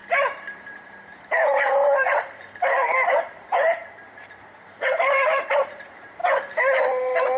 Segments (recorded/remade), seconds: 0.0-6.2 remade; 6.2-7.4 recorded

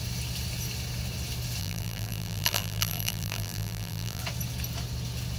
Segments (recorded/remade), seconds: 0.0-1.6 recorded; 1.6-4.2 remade; 4.2-5.4 recorded

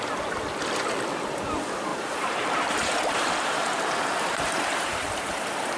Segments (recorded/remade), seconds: 0.0-1.9 recorded; 1.9-5.8 remade

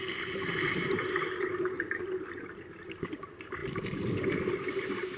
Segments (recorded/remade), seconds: 0.0-0.8 remade; 0.8-1.6 recorded; 1.6-5.2 remade

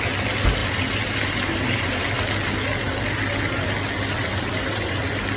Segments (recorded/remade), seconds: 0.0-0.6 recorded; 0.6-2.0 remade; 2.0-4.2 recorded; 4.2-5.0 remade; 5.0-5.4 recorded

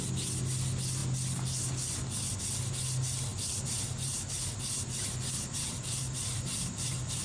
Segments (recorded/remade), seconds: 0.0-3.3 recorded; 3.3-7.2 remade

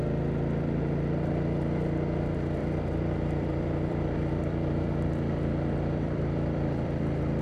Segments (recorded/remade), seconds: 0.0-2.6 recorded; 2.6-7.0 remade; 7.0-7.4 recorded